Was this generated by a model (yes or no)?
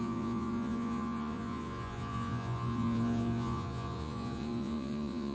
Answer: yes